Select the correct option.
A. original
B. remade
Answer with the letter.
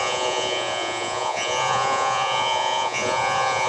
B